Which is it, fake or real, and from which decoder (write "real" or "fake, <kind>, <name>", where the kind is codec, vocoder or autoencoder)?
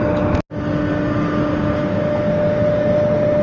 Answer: real